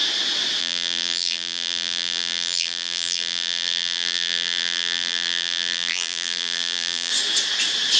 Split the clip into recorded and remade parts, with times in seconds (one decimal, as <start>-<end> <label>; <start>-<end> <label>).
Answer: 0.0-0.6 recorded; 0.6-7.1 remade; 7.1-8.0 recorded